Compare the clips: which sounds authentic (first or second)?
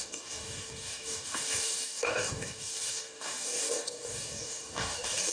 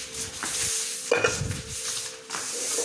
second